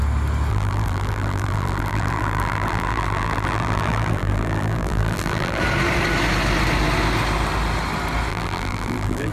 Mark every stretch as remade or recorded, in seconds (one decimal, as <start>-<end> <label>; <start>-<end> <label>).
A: 0.0-0.5 recorded; 0.5-5.6 remade; 5.6-8.3 recorded; 8.3-9.3 remade